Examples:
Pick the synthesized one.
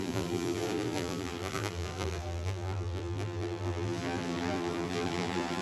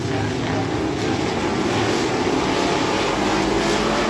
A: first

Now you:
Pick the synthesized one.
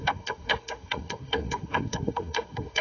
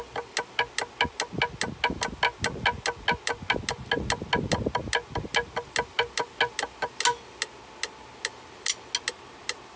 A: first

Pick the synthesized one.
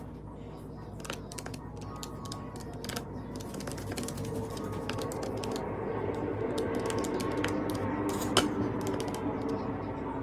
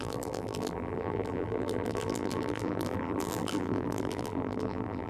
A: second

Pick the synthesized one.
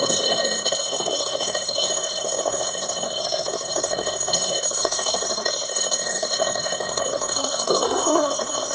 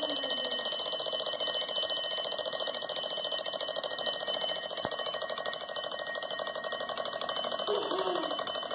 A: first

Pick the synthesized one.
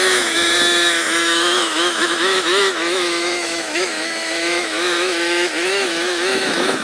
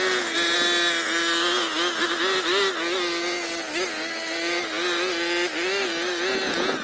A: first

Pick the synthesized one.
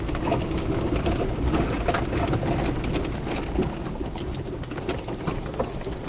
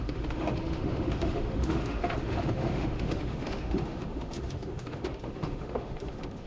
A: second